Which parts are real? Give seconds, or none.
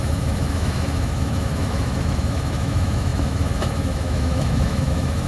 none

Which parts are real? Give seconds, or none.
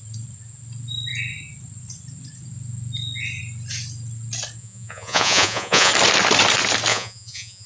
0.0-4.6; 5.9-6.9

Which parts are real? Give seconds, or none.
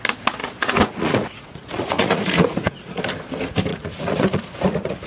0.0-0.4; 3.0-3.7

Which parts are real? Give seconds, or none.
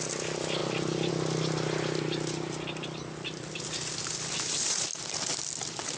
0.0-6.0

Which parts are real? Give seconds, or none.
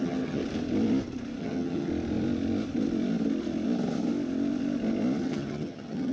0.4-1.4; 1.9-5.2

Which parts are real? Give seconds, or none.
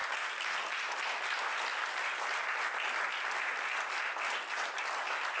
0.0-5.4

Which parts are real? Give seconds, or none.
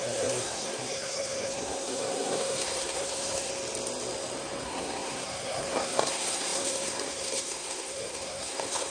3.5-4.6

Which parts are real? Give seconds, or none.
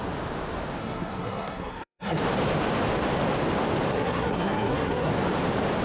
0.0-0.8; 2.2-3.9; 5.1-5.8